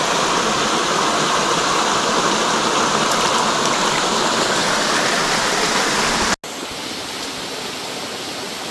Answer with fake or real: real